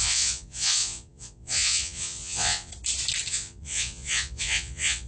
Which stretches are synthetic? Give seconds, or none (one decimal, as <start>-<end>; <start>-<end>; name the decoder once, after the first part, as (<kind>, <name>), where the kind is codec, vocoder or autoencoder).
0.0-2.7 (vocoder, Vocos); 3.3-5.1